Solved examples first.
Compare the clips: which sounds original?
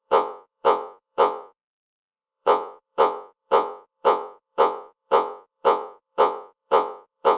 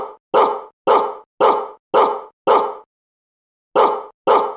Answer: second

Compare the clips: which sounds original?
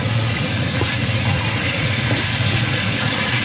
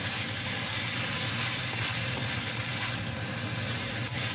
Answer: second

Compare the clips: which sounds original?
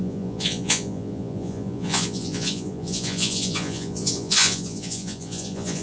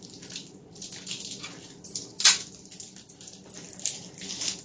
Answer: second